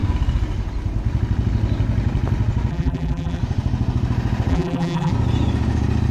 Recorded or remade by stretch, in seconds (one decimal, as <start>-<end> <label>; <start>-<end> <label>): 0.0-2.7 recorded; 2.7-3.4 remade; 3.4-4.5 recorded; 4.5-5.1 remade; 5.1-6.1 recorded